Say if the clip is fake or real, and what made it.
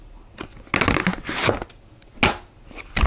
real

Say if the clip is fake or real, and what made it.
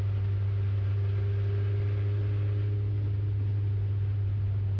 real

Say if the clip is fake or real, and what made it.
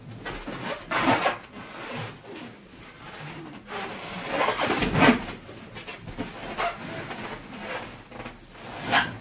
real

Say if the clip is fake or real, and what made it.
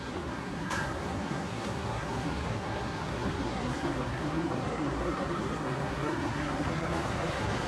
fake, codec, SNAC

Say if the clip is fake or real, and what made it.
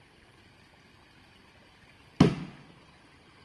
real